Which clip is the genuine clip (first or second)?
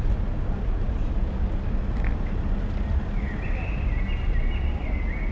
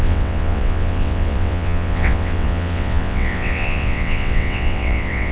first